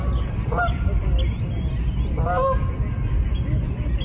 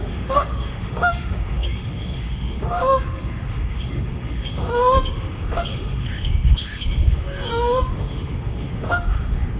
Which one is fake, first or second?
second